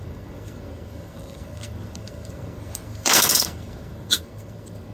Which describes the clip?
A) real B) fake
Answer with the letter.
B